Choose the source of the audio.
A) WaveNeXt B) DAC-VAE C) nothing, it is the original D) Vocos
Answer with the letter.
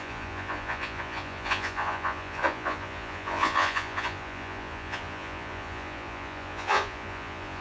D